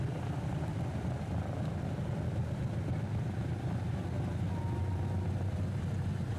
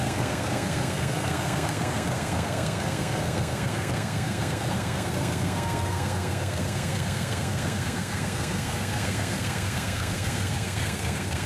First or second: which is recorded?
first